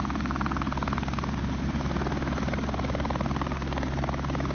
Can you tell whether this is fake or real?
real